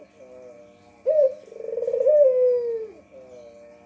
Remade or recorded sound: recorded